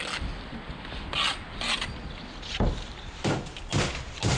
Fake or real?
real